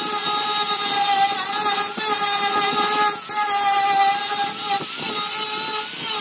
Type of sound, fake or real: real